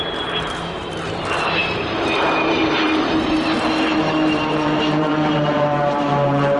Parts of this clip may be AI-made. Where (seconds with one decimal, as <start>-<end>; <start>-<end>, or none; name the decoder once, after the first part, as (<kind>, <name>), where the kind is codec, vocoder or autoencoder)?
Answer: 0.0-6.6 (vocoder, BigVGAN v2)